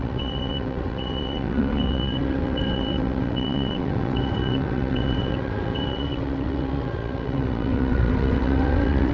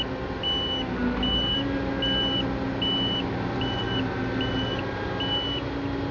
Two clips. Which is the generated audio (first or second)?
first